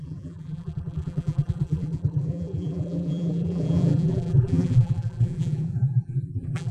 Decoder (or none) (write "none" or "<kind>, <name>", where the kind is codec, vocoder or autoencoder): vocoder, BigVGAN v2